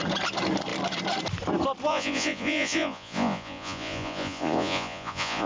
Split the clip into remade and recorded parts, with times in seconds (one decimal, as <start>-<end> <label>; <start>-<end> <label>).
0.0-1.9 recorded; 1.9-5.5 remade